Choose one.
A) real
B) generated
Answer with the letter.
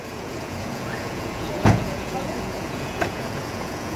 B